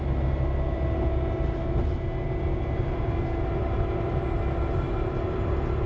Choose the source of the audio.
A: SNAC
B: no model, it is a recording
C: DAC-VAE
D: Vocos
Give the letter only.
B